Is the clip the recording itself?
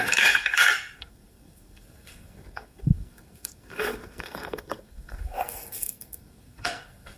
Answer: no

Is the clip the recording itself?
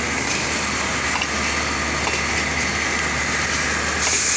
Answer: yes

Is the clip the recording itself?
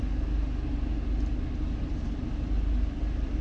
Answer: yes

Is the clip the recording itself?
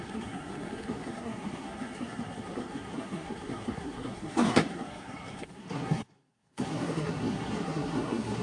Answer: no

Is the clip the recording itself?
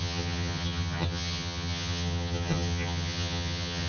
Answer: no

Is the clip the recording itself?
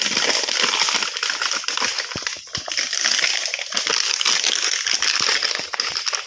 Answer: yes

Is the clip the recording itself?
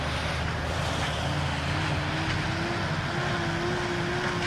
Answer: yes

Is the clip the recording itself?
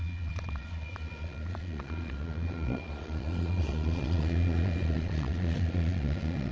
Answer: no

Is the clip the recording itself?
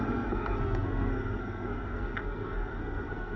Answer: no